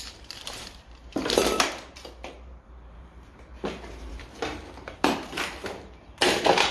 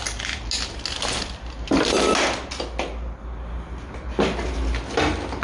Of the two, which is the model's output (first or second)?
first